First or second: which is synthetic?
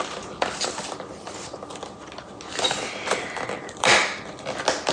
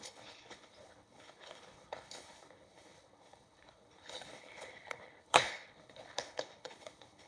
second